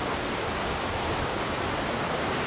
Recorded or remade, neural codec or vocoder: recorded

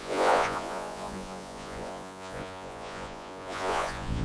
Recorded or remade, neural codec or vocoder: remade, vocoder, Vocos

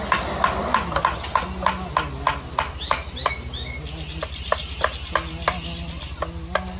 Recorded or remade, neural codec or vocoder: recorded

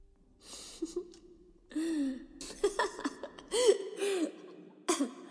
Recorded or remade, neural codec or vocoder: recorded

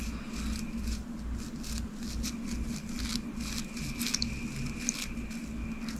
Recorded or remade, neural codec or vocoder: recorded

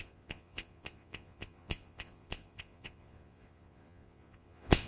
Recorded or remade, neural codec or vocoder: remade, vocoder, Vocos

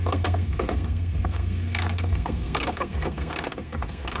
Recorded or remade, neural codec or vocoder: remade, codec, SNAC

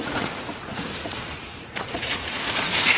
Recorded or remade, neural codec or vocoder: remade, vocoder, Vocos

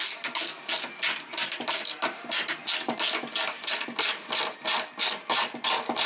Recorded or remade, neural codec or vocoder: recorded